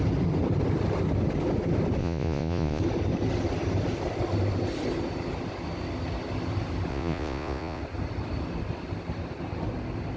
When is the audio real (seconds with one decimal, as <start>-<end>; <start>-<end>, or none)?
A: 0.0-2.0; 2.8-6.9; 7.8-10.2